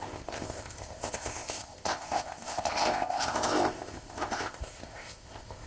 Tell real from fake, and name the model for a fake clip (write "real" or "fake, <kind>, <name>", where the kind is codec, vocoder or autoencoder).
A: fake, codec, ZipCodec